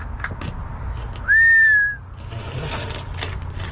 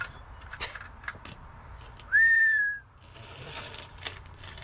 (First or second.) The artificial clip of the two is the second